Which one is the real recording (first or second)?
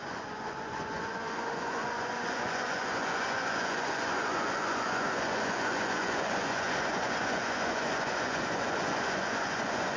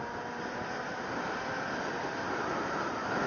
second